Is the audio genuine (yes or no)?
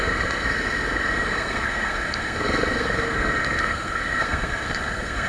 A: no